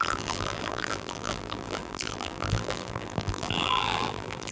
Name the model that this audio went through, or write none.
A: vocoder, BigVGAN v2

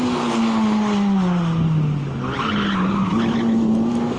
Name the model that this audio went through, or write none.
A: none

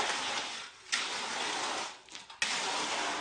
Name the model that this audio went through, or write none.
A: none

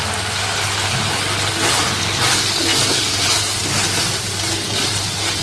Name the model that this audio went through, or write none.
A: none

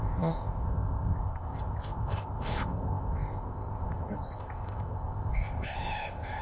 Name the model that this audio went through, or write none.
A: codec, ZipCodec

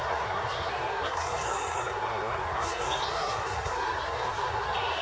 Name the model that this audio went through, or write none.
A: codec, SNAC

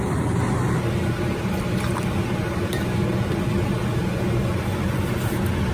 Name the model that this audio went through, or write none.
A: none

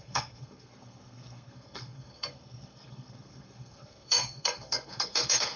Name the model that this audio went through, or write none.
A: codec, SNAC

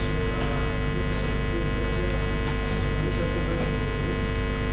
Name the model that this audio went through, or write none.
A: none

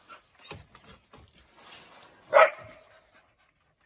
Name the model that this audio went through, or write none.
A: none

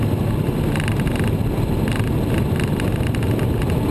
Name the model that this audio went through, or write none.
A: none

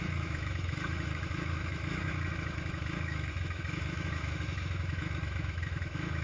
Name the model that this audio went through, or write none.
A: autoencoder, DAC-VAE